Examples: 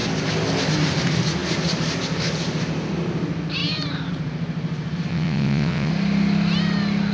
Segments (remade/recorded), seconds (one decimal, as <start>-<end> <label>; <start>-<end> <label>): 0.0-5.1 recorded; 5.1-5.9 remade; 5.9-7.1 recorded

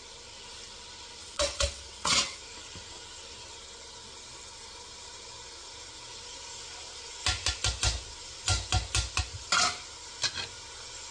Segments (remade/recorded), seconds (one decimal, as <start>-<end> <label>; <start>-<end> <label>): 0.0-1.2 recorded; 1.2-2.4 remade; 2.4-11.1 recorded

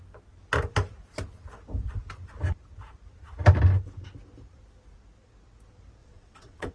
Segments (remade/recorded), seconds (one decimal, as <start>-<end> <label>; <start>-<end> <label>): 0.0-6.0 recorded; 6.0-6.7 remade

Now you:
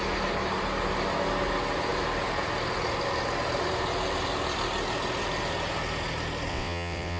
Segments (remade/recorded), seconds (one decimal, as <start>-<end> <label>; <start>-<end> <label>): 0.0-6.5 recorded; 6.5-7.2 remade

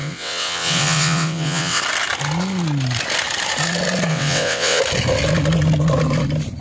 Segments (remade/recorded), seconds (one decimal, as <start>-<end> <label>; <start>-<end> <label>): 0.0-1.8 remade; 1.8-4.1 recorded; 4.1-4.8 remade; 4.8-6.6 recorded

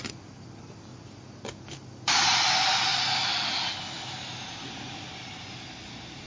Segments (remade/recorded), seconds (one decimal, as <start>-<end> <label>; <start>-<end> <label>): 0.0-6.3 recorded